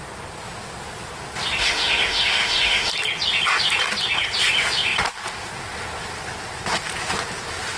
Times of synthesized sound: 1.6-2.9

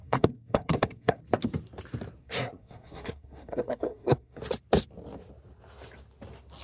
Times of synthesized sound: 0.0-1.2; 2.2-4.4

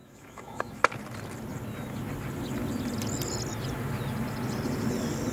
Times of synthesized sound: 0.0-0.8

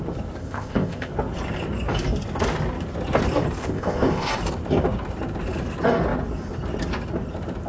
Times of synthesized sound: 0.4-1.1; 3.6-4.3

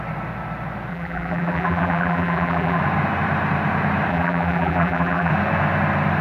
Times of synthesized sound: 0.9-2.8; 4.1-5.3

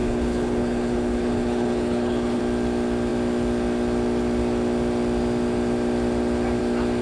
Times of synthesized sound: 0.0-2.4

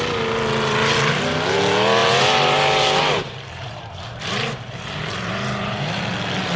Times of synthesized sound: 2.0-6.0